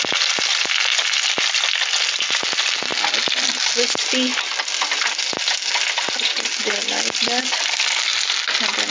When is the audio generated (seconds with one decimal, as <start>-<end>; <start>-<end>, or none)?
none